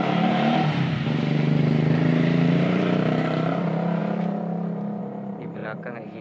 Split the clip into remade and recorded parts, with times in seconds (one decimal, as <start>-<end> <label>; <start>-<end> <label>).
0.0-6.2 remade